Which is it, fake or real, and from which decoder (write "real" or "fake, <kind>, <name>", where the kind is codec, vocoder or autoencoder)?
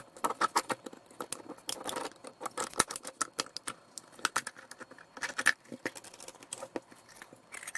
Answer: real